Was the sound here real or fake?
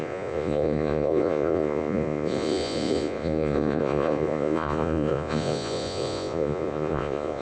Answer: fake